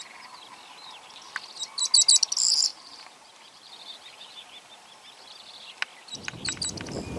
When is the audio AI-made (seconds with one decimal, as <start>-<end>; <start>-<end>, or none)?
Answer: 2.7-3.7